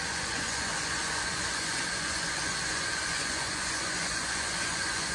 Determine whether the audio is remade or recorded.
remade